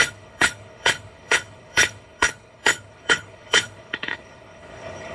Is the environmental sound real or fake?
fake